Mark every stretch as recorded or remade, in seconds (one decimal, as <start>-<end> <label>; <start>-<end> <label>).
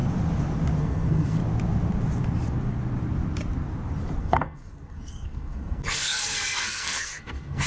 0.0-0.8 recorded; 0.8-1.4 remade; 1.4-4.2 recorded; 4.2-7.7 remade